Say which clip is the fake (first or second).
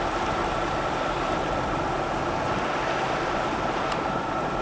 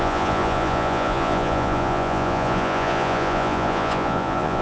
second